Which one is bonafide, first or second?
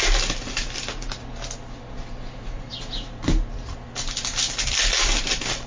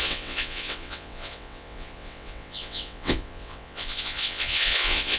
first